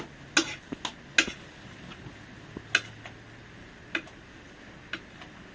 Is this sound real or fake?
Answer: real